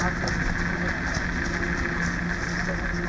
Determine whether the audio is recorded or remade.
recorded